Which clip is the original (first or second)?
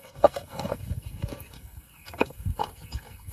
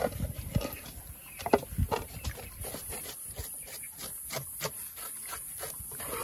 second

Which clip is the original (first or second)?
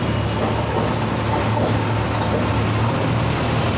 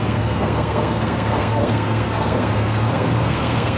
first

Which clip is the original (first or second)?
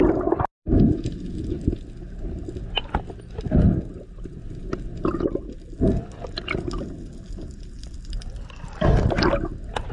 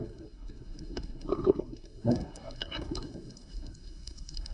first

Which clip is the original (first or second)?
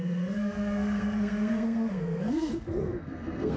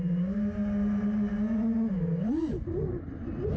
second